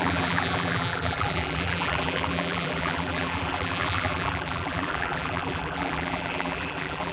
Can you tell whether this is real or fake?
fake